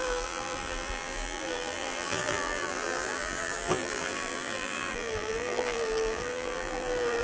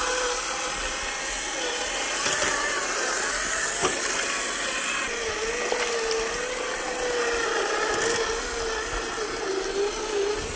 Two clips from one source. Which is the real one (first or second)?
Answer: second